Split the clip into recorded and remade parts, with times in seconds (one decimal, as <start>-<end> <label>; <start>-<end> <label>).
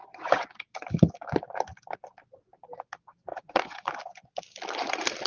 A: 0.0-3.3 recorded; 3.3-3.9 remade; 3.9-5.3 recorded